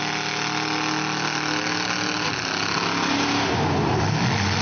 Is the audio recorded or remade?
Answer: recorded